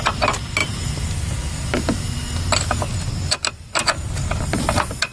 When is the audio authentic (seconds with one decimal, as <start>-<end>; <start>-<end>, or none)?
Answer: 0.0-5.1